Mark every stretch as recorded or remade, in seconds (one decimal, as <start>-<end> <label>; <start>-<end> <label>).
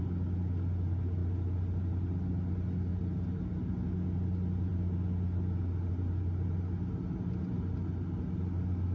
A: 0.0-8.9 recorded